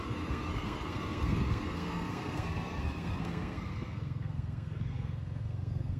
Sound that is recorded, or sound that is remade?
remade